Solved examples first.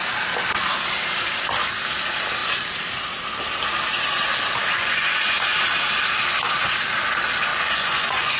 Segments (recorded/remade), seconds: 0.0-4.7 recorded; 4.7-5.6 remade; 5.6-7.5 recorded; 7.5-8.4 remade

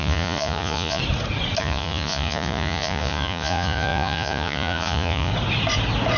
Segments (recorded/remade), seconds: 0.0-1.0 remade; 1.0-1.6 recorded; 1.6-5.3 remade; 5.3-6.2 recorded

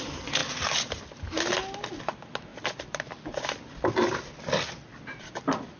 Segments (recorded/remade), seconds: 0.0-0.4 recorded; 0.4-1.2 remade; 1.2-2.5 recorded; 2.5-3.2 remade; 3.2-4.9 recorded; 4.9-5.8 remade

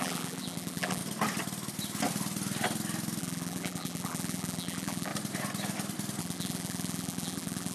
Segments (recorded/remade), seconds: 0.0-1.0 remade; 1.0-3.2 recorded; 3.2-5.1 remade; 5.1-6.2 recorded; 6.2-7.7 remade

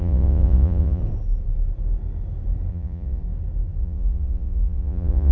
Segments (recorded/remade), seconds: 0.0-1.0 remade; 1.0-2.7 recorded; 2.7-3.2 remade; 3.2-3.8 recorded; 3.8-5.3 remade

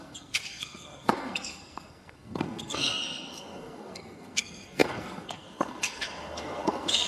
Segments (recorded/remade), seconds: 0.0-7.1 remade

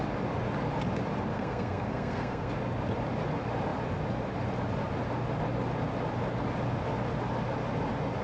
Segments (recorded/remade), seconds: 0.0-1.3 recorded; 1.3-2.5 remade; 2.5-8.2 recorded

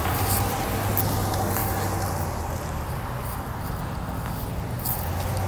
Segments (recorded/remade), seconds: 0.0-5.5 recorded